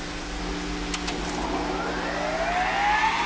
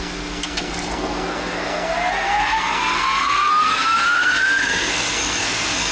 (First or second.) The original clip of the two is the first